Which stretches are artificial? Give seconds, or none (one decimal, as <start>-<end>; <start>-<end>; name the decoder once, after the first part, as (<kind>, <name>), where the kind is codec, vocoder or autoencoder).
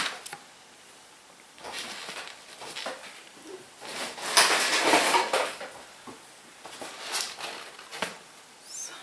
none